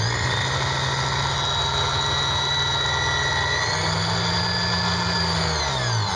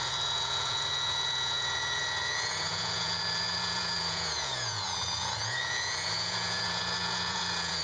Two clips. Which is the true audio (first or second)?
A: first